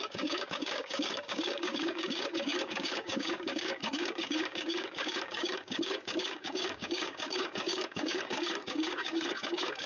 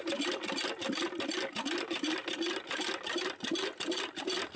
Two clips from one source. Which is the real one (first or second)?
second